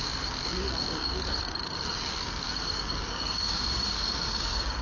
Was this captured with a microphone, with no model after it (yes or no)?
no